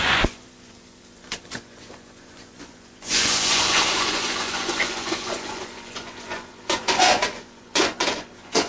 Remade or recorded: remade